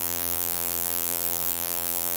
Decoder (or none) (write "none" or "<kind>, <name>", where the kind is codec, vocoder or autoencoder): vocoder, BigVGAN v2